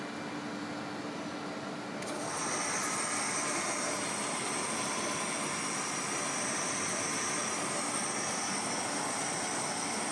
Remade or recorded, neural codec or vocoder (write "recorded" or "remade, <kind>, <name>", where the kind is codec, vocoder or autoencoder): recorded